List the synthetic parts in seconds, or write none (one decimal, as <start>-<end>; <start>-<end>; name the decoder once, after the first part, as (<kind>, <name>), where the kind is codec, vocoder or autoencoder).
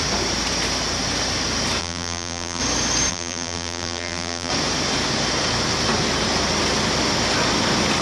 1.8-2.6 (vocoder, BigVGAN v2); 3.1-4.5